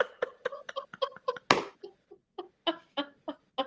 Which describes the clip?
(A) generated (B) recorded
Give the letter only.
B